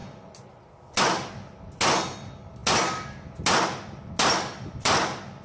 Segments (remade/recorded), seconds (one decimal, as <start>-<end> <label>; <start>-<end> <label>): 0.0-5.4 recorded